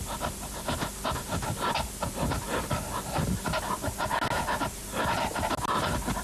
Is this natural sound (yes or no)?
yes